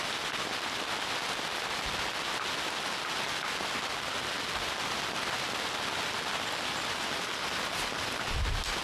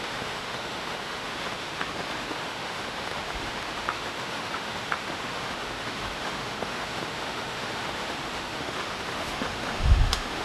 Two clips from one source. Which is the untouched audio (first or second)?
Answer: first